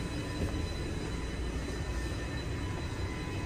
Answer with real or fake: real